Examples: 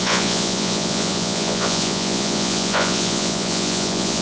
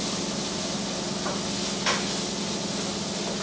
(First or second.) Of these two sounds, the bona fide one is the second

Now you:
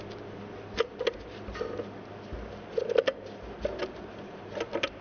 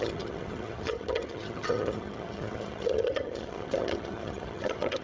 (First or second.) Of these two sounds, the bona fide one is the first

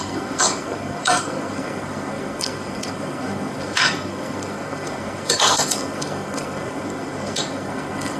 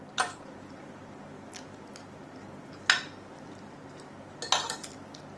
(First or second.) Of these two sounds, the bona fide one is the second